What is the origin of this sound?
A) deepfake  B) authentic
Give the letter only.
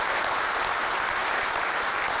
B